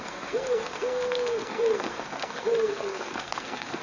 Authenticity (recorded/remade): remade